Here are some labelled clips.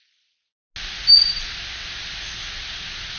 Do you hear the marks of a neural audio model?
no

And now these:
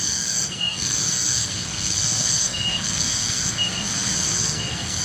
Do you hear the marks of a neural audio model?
yes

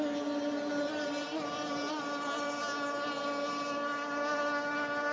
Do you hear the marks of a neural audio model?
no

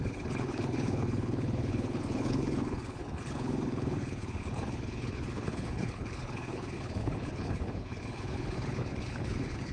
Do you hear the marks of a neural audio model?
yes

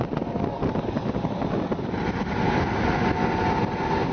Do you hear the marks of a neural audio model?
no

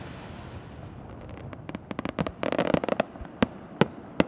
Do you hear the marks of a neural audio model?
no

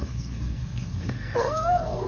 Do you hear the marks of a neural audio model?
yes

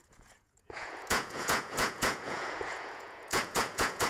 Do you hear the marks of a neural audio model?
yes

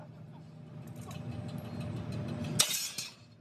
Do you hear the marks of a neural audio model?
no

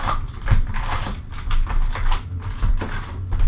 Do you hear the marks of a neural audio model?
yes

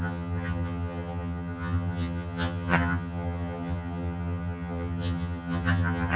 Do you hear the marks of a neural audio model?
yes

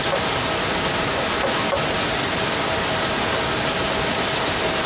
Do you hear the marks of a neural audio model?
no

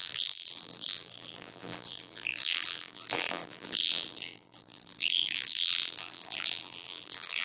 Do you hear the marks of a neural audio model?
yes